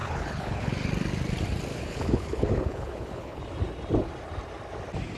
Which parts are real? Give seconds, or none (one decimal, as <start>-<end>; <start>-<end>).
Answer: 0.7-1.7; 3.4-5.2